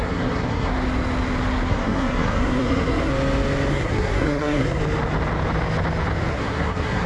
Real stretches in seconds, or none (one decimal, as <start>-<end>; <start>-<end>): 0.7-1.7; 3.1-3.7; 4.8-6.3